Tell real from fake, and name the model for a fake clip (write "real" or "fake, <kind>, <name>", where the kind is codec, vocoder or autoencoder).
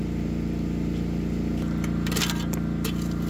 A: real